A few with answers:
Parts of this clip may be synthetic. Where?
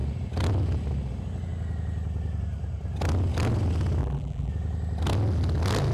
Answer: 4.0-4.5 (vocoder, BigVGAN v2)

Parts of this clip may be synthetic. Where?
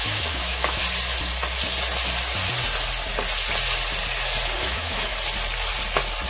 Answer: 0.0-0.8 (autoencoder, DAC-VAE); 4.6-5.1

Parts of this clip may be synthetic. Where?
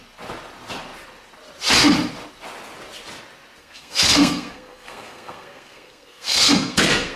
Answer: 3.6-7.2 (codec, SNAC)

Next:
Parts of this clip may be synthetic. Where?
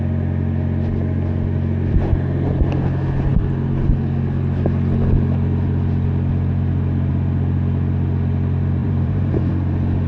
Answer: 8.8-9.5 (vocoder, BigVGAN v2)